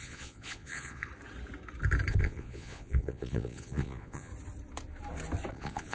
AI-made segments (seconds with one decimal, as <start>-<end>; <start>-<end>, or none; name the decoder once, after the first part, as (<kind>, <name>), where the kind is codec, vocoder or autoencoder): 0.0-1.1 (vocoder, Vocos); 2.1-4.3; 5.5-5.9